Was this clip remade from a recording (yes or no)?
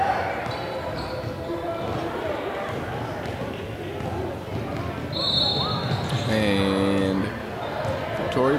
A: no